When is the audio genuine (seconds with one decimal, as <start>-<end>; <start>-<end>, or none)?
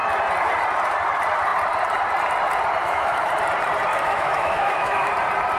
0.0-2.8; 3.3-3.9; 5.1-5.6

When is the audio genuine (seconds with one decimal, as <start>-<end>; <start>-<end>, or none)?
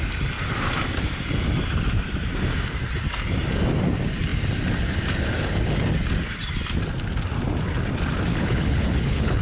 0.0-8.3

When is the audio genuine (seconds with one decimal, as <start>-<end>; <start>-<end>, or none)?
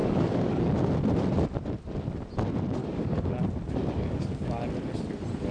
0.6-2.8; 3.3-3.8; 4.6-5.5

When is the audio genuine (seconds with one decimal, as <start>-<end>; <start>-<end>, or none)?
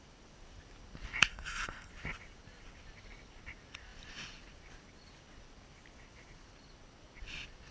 0.0-1.3; 1.9-7.7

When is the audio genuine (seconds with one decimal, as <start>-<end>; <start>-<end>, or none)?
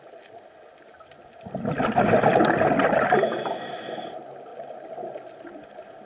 0.0-6.1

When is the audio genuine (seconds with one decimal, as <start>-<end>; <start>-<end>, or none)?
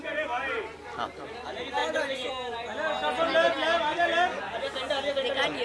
0.0-1.8; 2.3-3.9; 4.5-5.6